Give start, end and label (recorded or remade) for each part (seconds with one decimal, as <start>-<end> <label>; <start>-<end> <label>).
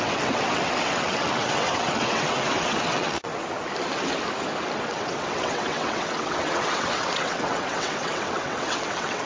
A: 0.0-3.3 remade; 3.3-4.8 recorded; 4.8-9.3 remade